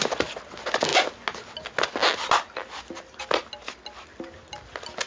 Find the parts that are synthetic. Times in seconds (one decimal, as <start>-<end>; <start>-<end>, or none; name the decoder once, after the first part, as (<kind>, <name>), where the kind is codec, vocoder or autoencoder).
none